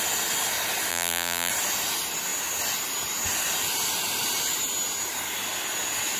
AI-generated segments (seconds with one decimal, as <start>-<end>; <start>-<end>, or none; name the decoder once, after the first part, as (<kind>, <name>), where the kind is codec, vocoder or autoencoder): 0.9-1.5 (vocoder, BigVGAN v2)

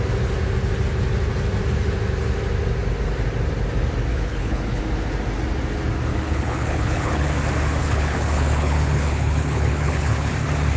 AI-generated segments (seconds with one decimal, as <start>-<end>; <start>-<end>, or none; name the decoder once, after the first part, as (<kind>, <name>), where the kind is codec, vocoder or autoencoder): 4.1-4.8 (codec, HILCodec); 6.1-7.3; 7.8-10.3

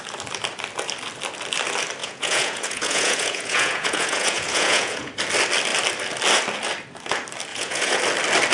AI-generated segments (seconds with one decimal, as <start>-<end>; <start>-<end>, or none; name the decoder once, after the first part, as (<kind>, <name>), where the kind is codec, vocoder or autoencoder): 2.0-5.1 (vocoder, Vocos); 7.5-8.0

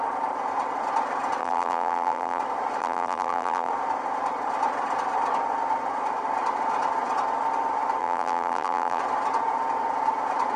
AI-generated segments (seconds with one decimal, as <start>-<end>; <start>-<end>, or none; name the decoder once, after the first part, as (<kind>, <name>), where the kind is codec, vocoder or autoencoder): 1.4-2.4 (vocoder, BigVGAN v2); 2.8-3.7; 8.0-9.0

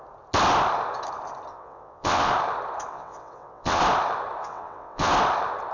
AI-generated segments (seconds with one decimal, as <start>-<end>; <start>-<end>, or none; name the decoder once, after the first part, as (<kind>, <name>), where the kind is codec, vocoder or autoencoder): 1.5-2.3 (vocoder, WaveNeXt); 2.9-3.8; 4.4-5.1

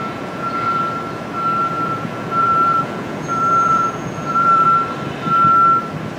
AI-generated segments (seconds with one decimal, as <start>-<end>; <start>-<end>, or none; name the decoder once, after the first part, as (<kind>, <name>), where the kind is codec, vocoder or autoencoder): 0.0-0.8 (vocoder, Vocos); 1.6-4.7